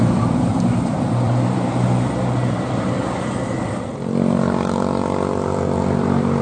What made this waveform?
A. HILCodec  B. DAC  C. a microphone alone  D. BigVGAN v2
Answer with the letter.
D